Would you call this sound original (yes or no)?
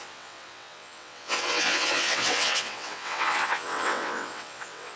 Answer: no